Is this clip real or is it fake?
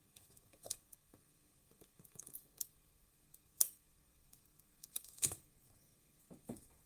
fake